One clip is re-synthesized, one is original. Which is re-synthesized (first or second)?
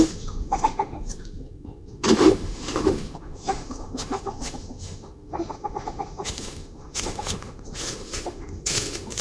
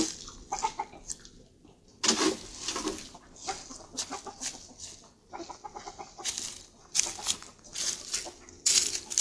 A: first